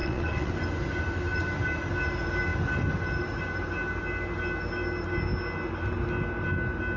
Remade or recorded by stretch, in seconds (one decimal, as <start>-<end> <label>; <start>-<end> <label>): 0.0-0.5 remade; 0.5-7.0 recorded